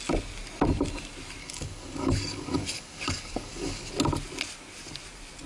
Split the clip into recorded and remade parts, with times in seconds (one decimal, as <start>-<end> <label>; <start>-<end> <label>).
0.0-1.4 recorded; 1.4-3.9 remade; 3.9-5.5 recorded